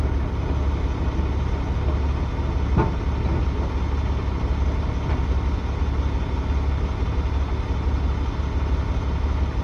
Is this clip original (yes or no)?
yes